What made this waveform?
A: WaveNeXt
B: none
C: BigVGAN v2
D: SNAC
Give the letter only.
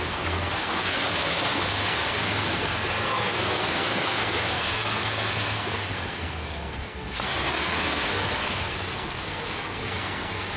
D